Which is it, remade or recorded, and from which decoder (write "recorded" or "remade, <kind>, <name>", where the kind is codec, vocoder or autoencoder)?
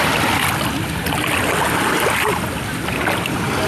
recorded